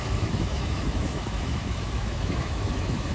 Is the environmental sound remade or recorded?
remade